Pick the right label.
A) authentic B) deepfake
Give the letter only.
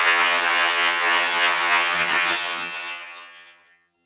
B